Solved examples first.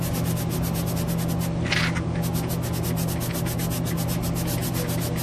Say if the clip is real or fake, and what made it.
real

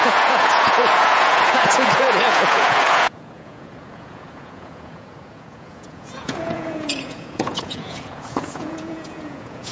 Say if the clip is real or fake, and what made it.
fake, vocoder, Vocos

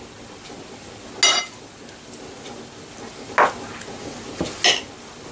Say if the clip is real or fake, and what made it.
real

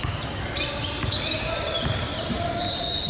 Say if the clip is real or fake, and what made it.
fake, vocoder, BigVGAN v2